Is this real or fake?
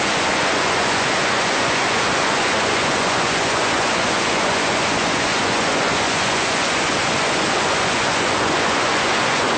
fake